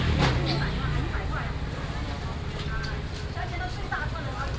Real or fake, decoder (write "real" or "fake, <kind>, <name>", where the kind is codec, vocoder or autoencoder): real